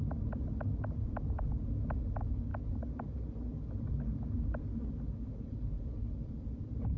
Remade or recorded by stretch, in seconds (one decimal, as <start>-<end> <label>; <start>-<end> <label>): 0.0-7.0 recorded

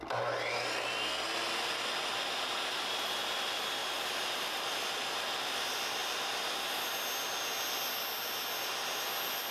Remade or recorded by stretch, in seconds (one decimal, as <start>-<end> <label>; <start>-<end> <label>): 0.0-9.5 recorded